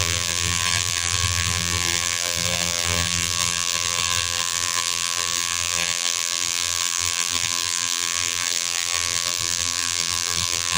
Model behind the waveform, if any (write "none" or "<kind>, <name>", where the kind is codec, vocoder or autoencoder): vocoder, BigVGAN v2